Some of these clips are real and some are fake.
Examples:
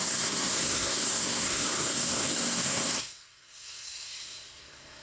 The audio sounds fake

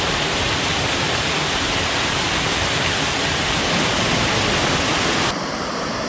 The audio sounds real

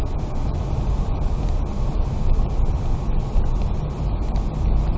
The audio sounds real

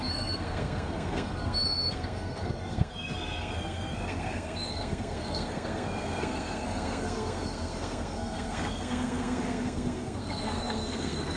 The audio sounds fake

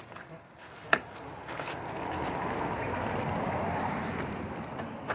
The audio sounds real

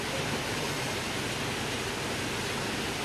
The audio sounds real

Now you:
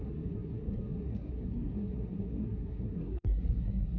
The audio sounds fake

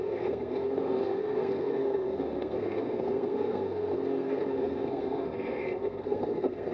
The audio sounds fake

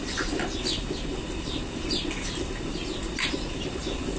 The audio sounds real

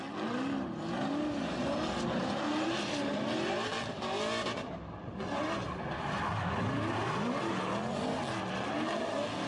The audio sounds real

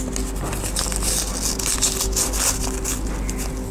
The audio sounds real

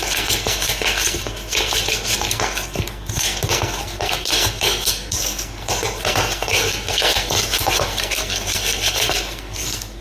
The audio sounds fake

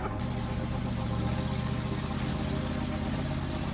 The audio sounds real